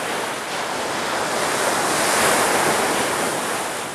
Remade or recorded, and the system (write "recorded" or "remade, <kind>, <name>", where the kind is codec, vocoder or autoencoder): recorded